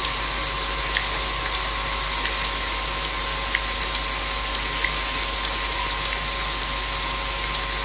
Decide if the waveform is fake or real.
real